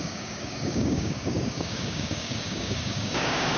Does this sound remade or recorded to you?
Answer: remade